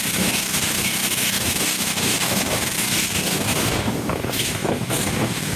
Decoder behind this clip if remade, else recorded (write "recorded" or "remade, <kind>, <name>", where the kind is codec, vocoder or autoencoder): remade, codec, DAC